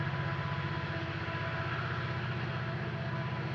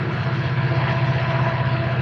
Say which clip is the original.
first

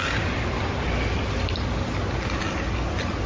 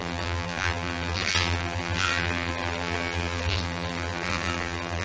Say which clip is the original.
first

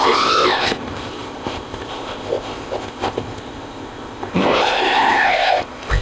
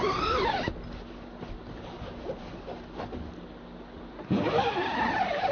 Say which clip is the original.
second